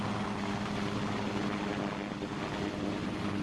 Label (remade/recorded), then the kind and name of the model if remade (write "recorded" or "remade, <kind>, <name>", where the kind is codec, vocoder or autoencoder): recorded